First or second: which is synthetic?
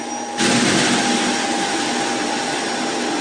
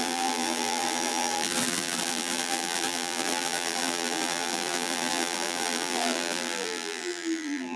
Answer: second